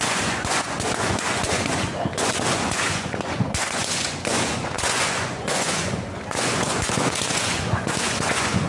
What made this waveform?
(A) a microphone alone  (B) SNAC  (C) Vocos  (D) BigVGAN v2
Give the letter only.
C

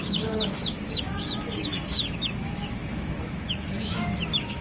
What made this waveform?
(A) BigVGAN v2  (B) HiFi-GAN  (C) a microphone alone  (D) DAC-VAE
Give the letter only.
D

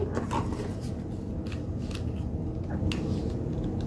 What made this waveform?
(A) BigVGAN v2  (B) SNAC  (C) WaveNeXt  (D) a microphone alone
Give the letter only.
D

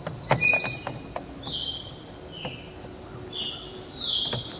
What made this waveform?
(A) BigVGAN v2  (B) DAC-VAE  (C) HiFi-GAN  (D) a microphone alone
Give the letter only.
D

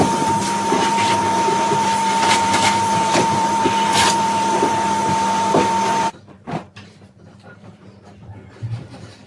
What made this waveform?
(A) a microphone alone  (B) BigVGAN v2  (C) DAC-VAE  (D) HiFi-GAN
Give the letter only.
B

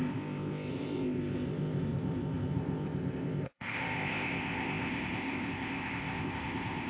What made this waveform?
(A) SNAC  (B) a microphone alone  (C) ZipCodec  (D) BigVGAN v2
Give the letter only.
C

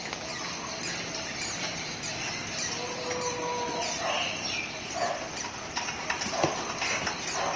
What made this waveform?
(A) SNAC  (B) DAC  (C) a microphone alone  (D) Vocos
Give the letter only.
C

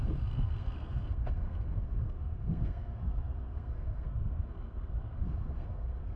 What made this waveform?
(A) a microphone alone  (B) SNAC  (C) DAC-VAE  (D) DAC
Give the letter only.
B